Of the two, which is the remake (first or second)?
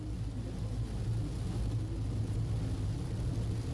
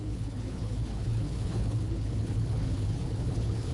second